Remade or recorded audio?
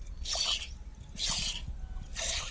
recorded